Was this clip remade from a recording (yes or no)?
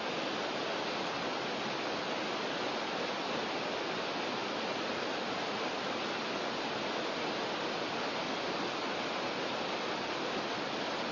no